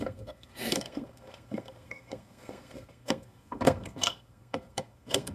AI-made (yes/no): yes